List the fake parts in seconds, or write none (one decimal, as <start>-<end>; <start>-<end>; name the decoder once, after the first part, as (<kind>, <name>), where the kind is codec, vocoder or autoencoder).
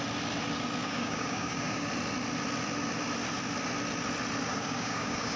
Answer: 0.8-1.9 (codec, DAC); 4.5-5.4